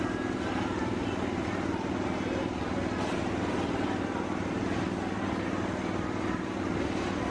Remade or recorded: recorded